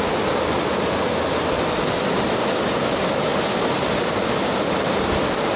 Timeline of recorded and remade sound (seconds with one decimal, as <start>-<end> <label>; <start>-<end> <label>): 0.0-5.6 recorded